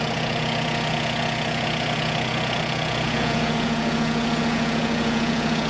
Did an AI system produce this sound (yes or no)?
yes